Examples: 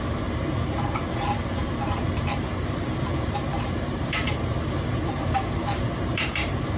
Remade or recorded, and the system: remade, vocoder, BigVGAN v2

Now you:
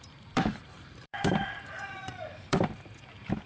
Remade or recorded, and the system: remade, vocoder, BigVGAN v2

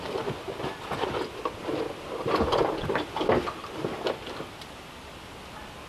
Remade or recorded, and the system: recorded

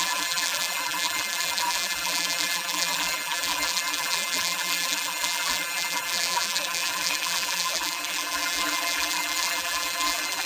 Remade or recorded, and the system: remade, vocoder, BigVGAN v2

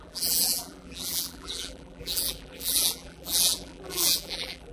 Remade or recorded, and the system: remade, vocoder, BigVGAN v2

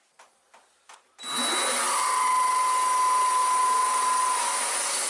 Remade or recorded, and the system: recorded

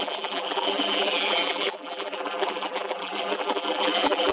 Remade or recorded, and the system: remade, vocoder, BigVGAN v2